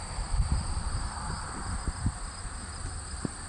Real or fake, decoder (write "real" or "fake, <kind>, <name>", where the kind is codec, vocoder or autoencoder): real